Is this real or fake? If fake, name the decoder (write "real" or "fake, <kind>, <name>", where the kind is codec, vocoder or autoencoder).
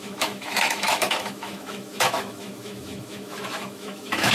fake, autoencoder, DAC-VAE